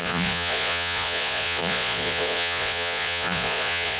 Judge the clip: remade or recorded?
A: remade